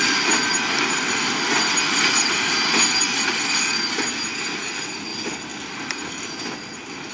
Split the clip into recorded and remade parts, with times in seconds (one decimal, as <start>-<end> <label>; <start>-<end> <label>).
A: 0.0-7.1 recorded